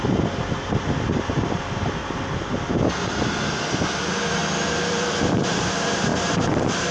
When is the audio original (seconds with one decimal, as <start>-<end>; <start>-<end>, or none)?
2.0-4.0; 4.4-4.9